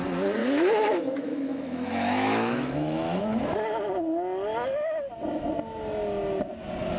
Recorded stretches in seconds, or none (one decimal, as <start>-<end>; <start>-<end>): 0.0-0.4; 3.2-7.0